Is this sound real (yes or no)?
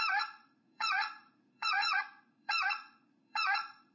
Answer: no